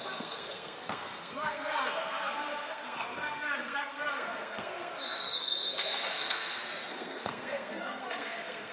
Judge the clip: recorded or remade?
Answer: remade